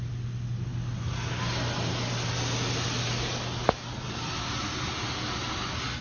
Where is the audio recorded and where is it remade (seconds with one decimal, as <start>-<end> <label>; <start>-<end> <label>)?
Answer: 0.0-6.0 recorded